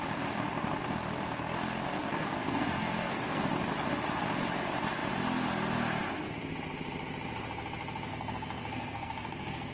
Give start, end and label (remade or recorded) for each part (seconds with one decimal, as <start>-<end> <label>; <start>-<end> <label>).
0.0-1.9 recorded; 1.9-3.5 remade; 3.5-8.1 recorded; 8.1-9.7 remade